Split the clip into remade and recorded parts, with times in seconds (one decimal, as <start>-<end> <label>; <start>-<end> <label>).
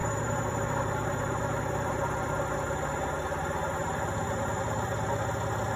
0.0-1.9 remade; 1.9-3.8 recorded; 3.8-5.8 remade